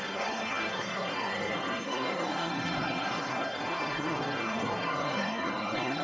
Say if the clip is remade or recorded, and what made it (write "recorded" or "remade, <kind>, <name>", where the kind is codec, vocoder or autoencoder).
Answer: remade, codec, SNAC